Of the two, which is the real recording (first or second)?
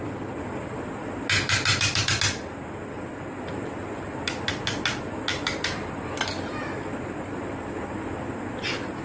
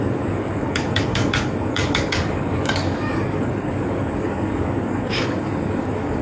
first